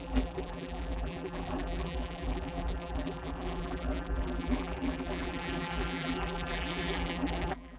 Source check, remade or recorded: remade